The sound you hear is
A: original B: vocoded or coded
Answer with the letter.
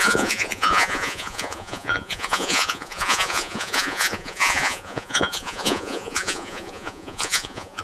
B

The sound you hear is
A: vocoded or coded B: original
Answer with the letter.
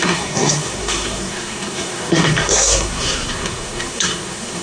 A